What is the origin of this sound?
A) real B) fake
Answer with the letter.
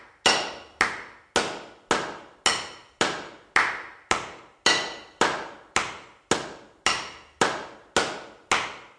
A